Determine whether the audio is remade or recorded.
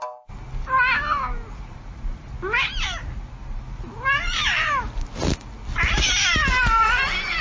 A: recorded